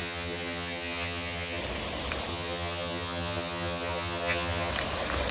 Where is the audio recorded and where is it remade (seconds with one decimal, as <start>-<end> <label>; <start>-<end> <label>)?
0.0-1.6 remade; 1.6-2.3 recorded; 2.3-4.7 remade; 4.7-5.3 recorded